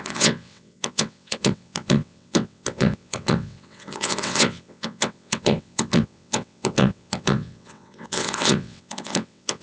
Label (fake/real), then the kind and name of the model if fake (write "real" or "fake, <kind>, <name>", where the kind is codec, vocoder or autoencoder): fake, vocoder, WaveNeXt